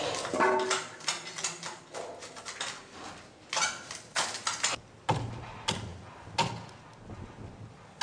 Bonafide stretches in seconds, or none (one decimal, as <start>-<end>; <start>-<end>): 0.0-8.0